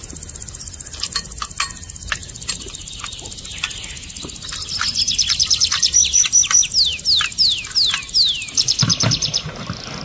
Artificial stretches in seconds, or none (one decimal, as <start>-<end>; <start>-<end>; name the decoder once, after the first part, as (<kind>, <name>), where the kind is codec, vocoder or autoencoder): none

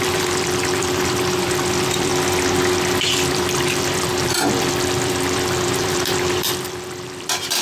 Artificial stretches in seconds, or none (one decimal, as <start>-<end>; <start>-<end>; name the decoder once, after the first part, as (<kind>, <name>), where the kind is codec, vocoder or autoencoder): 0.0-2.1 (vocoder, BigVGAN v2); 3.0-7.6